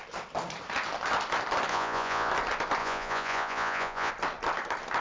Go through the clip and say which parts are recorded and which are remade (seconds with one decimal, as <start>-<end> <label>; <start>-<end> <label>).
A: 0.0-1.7 recorded; 1.7-2.3 remade; 2.3-2.8 recorded; 2.8-4.1 remade; 4.1-5.0 recorded